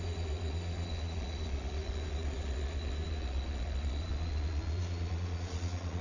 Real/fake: fake